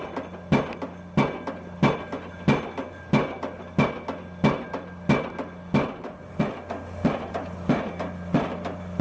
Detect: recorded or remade recorded